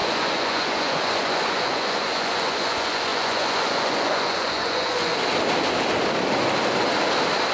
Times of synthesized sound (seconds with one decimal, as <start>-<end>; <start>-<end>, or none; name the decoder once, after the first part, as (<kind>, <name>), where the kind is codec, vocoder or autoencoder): 0.0-5.1 (vocoder, Vocos)